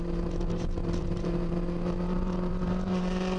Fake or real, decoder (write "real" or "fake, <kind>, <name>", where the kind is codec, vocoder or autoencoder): fake, vocoder, BigVGAN v2